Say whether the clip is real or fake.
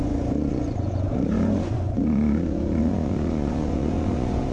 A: fake